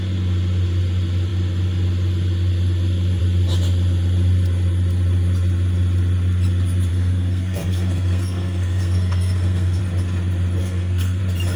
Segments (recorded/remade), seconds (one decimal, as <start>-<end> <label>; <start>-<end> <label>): 0.0-6.9 recorded; 6.9-9.8 remade; 9.8-10.6 recorded; 10.6-11.2 remade; 11.2-11.6 recorded